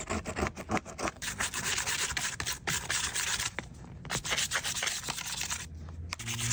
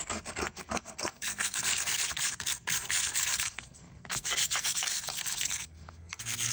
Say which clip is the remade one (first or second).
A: second